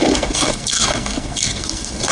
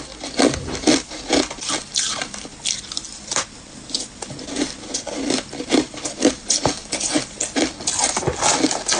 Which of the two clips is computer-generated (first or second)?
first